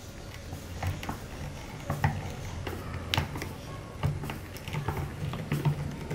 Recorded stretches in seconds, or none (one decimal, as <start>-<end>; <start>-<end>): 0.0-5.1